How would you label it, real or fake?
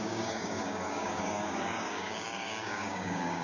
fake